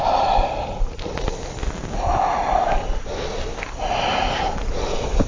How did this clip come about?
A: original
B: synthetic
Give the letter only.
A